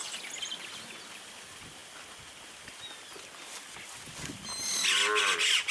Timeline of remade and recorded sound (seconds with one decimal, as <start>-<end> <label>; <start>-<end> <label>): 0.0-5.7 recorded

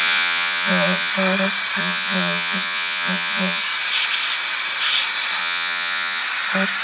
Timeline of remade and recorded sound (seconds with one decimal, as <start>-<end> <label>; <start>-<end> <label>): 0.0-1.1 remade; 1.1-1.8 recorded; 1.8-3.6 remade; 3.6-5.4 recorded; 5.4-6.2 remade; 6.2-6.8 recorded

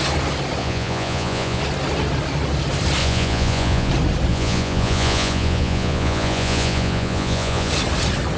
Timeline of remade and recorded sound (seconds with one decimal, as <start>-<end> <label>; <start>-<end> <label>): 0.0-0.6 recorded; 0.6-1.6 remade; 1.6-3.0 recorded; 3.0-3.9 remade; 3.9-4.3 recorded; 4.3-7.7 remade; 7.7-8.4 recorded

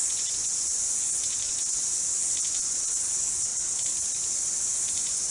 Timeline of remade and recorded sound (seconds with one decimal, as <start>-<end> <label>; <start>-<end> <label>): 0.0-1.8 remade; 1.8-2.4 recorded; 2.4-3.5 remade; 3.5-4.6 recorded; 4.6-5.3 remade

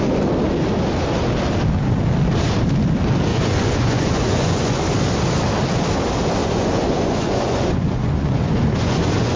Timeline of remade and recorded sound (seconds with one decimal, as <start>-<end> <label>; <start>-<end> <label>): 0.0-3.3 recorded; 3.3-4.8 remade; 4.8-6.4 recorded; 6.4-9.4 remade